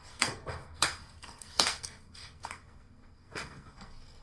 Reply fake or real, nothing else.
fake